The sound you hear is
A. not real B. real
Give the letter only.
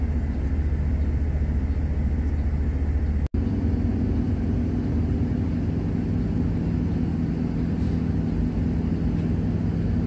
B